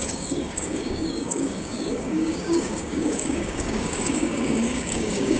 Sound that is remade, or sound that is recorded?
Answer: remade